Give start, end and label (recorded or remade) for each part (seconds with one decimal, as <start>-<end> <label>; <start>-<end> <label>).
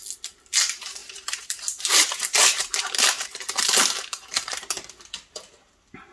0.0-1.0 recorded; 1.0-4.7 remade; 4.7-6.1 recorded